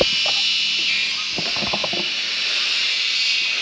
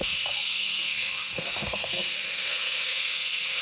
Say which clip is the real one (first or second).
first